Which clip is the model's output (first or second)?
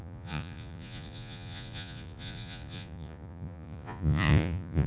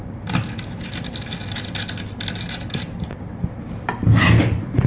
first